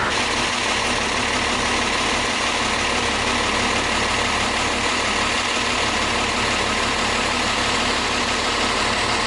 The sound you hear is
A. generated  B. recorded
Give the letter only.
B